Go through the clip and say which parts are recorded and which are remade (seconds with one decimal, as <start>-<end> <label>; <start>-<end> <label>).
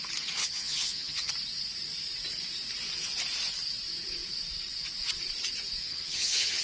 0.0-0.4 recorded; 0.4-1.3 remade; 1.3-5.8 recorded; 5.8-6.6 remade